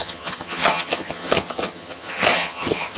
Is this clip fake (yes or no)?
yes